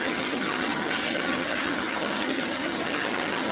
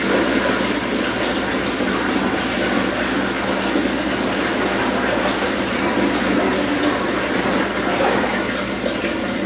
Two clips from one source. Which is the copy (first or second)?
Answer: first